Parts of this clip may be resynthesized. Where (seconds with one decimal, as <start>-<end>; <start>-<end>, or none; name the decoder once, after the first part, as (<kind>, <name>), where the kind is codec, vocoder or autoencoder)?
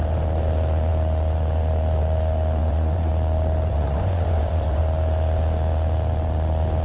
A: 2.6-3.1 (vocoder, Vocos); 3.7-4.8